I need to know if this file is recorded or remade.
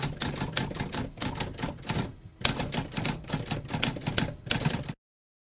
recorded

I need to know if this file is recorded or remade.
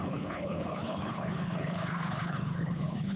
remade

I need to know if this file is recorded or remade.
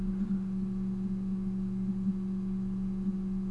recorded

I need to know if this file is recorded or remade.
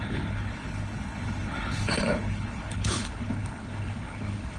remade